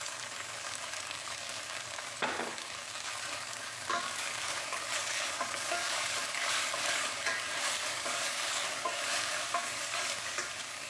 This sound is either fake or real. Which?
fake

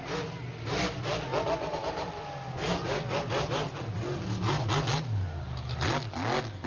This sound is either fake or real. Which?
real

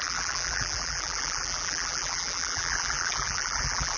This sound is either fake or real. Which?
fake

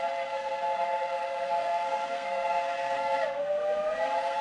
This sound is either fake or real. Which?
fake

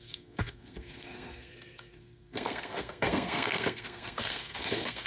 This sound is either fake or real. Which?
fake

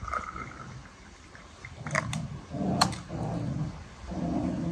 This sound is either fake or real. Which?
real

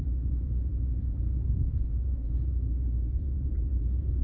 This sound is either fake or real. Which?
fake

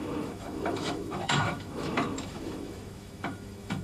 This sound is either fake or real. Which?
fake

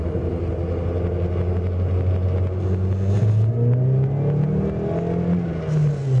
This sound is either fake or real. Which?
real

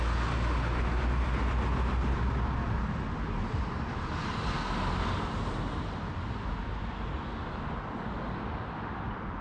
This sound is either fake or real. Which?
real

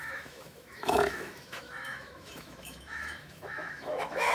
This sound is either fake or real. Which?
fake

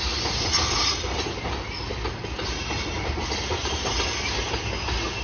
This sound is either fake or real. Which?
real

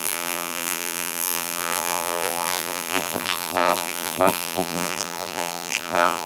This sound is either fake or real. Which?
fake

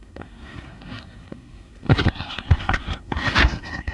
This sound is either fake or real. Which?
fake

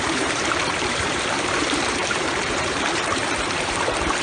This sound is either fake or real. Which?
fake